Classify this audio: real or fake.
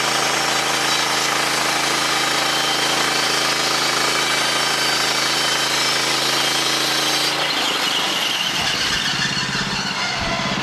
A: real